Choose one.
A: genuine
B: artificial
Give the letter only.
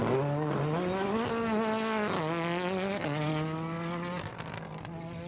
A